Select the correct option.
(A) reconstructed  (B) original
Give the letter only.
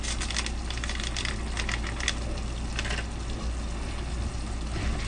B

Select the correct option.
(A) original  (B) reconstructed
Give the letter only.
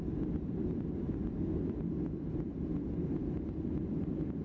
A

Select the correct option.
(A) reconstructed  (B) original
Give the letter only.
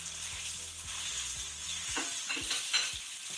B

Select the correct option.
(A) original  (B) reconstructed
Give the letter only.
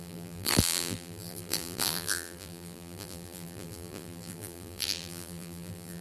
B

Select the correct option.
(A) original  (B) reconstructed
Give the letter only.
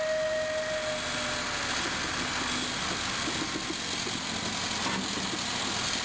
A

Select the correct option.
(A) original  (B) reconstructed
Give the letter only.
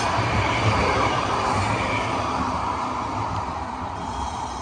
B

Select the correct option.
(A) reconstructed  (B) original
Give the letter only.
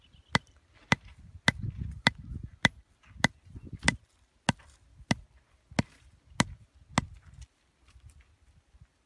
B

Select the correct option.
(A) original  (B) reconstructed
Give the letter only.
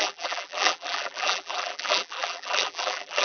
B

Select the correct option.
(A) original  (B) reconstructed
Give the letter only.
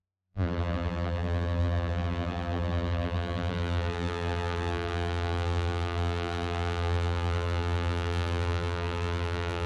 B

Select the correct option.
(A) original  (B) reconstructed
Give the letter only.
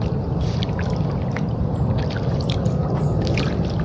A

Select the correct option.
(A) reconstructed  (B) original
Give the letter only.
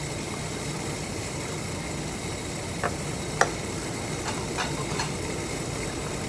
A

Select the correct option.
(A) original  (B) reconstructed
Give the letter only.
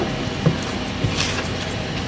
A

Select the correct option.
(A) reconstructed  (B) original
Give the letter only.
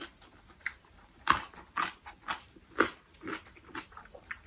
A